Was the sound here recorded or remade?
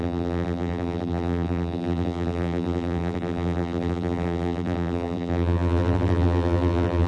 remade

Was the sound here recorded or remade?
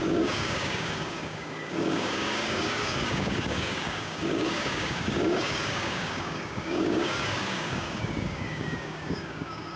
remade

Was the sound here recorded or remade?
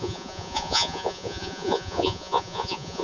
remade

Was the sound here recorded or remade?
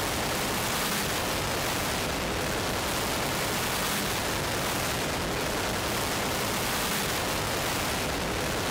recorded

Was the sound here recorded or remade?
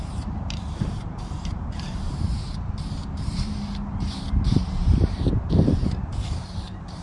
remade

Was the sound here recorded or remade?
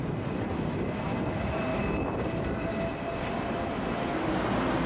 recorded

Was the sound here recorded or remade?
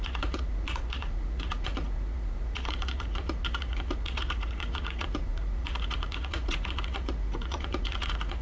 remade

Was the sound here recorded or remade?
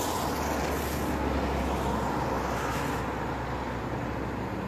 recorded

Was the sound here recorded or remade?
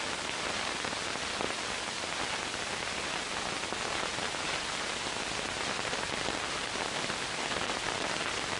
recorded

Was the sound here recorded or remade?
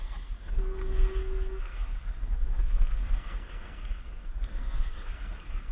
remade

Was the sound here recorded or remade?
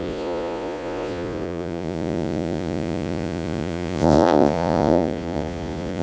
remade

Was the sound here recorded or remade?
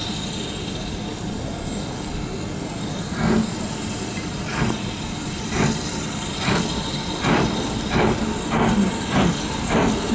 recorded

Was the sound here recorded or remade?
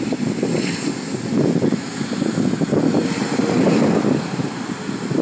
recorded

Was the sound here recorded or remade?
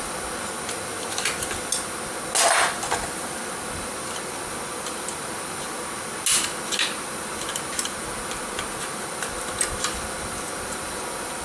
recorded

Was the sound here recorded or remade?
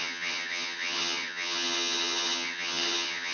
remade